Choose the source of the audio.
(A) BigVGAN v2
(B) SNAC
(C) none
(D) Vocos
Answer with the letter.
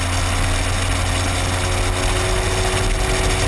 C